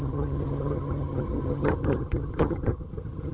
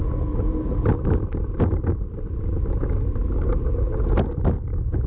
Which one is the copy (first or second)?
first